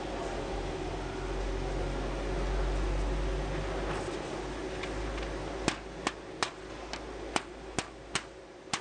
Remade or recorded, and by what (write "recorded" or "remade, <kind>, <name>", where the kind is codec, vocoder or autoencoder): recorded